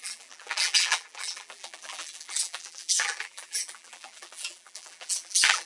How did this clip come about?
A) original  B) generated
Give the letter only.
B